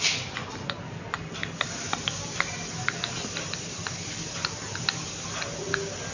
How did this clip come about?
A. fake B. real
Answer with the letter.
B